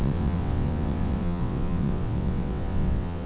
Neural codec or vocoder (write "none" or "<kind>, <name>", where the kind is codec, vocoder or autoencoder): vocoder, WaveNeXt